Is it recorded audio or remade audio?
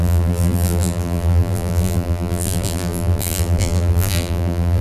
remade